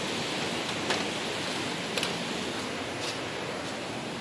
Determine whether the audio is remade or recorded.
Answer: recorded